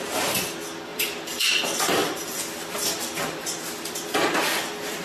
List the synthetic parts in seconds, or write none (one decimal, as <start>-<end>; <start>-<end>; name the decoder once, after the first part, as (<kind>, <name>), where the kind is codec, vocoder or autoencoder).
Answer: 0.9-1.5 (vocoder, BigVGAN v2); 2.0-3.6